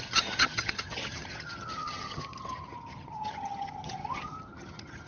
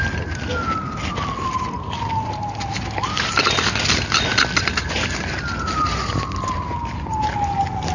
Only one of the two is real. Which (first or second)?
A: second